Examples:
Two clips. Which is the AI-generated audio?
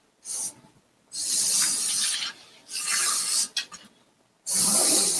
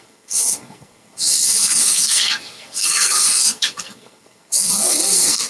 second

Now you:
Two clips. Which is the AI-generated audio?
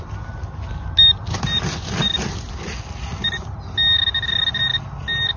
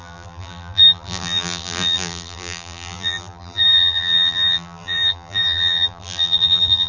second